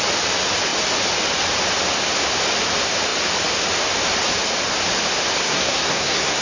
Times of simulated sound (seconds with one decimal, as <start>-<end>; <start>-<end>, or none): 5.4-6.4